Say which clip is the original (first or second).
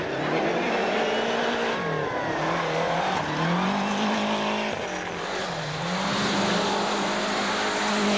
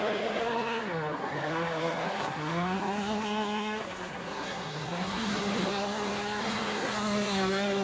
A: first